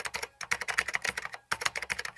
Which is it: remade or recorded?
recorded